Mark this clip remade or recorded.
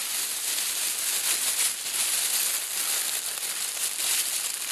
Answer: recorded